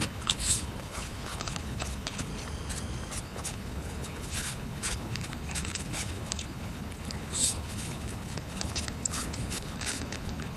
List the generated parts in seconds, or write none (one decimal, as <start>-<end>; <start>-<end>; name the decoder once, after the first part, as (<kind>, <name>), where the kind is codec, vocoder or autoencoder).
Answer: 0.0-2.3 (codec, HILCodec); 3.2-10.6